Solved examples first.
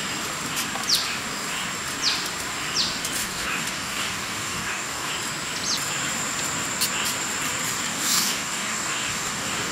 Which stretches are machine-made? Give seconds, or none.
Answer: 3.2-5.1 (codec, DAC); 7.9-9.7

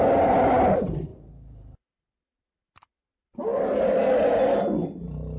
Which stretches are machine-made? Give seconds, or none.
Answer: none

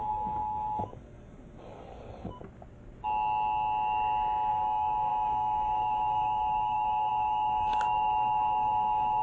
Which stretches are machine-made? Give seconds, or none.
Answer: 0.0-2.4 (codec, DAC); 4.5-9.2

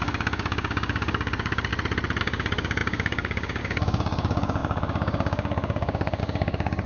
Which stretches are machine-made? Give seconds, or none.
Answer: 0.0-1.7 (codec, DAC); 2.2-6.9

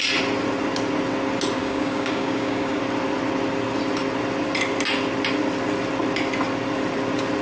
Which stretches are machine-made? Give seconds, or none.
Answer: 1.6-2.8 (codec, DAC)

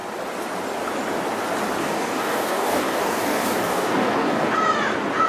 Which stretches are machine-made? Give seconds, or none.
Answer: 1.8-4.5 (codec, DAC)

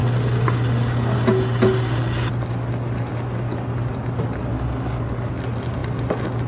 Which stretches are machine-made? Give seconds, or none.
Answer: 4.5-5.3 (codec, DAC)